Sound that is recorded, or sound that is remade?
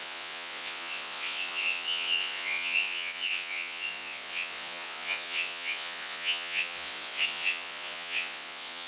remade